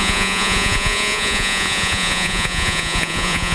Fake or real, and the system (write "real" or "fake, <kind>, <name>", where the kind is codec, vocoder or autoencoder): fake, vocoder, Vocos